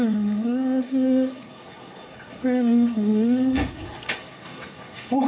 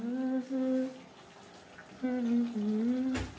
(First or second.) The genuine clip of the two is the second